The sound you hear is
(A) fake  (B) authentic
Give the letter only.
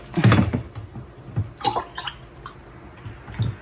B